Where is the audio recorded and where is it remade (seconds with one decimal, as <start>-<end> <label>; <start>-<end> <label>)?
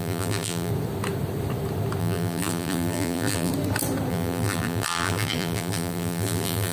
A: 0.0-0.7 remade; 0.7-2.0 recorded; 2.0-3.5 remade; 3.5-4.1 recorded; 4.1-6.7 remade